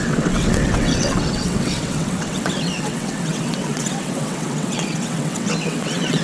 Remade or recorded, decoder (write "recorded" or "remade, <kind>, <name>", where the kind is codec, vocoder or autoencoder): remade, vocoder, WaveNeXt